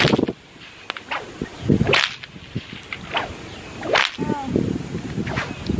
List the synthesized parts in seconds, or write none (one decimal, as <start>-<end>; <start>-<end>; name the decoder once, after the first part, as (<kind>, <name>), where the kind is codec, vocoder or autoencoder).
none

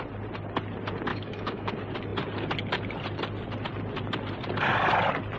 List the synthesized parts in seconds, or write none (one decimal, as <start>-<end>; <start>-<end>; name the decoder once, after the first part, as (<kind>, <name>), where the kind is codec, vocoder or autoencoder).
1.1-1.7 (autoencoder, DAC-VAE)

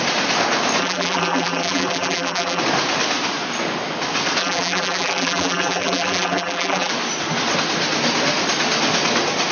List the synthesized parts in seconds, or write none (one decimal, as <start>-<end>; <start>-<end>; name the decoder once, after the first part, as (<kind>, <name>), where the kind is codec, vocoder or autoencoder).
0.8-2.6 (vocoder, BigVGAN v2); 4.4-6.9

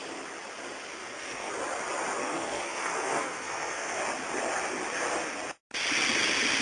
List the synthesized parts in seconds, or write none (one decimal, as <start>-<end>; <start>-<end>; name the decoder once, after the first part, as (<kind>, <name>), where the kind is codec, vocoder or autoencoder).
1.0-1.5 (codec, SNAC); 2.2-4.0

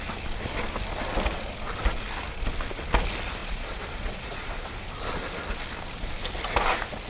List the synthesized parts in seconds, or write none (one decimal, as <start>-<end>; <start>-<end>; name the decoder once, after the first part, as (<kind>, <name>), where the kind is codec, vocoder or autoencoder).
3.4-4.7 (vocoder, Vocos)

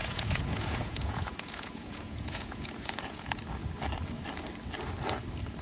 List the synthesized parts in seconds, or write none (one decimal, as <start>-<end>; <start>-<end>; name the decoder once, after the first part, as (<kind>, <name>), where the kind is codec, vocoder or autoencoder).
0.0-3.4 (vocoder, Vocos)

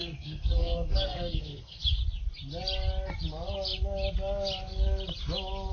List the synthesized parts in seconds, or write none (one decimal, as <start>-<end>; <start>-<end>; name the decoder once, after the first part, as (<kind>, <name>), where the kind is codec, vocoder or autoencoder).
0.0-1.8 (codec, SNAC)

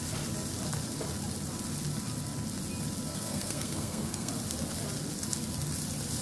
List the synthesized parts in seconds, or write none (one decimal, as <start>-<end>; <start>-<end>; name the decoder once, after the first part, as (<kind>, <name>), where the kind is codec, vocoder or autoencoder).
3.1-4.3 (codec, SNAC)